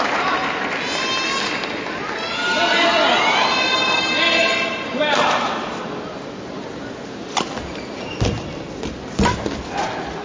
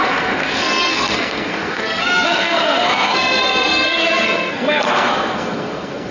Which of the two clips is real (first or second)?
first